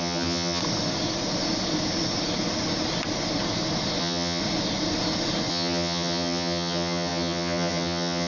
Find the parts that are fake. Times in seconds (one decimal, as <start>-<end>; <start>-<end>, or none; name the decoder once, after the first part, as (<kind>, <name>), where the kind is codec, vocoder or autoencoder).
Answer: 0.0-0.6 (vocoder, HiFi-GAN); 4.0-4.4; 5.5-8.3